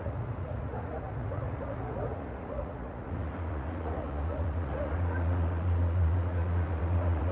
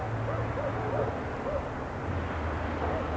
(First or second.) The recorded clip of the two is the second